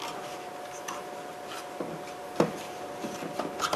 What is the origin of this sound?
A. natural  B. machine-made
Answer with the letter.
A